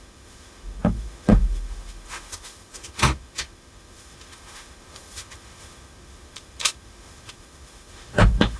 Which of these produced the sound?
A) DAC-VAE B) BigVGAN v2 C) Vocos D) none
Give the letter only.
A